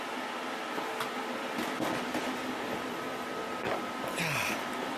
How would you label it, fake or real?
real